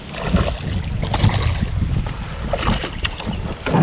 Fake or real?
real